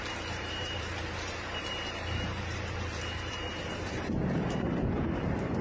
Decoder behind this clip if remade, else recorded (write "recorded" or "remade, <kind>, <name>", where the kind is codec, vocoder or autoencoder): remade, vocoder, BigVGAN v2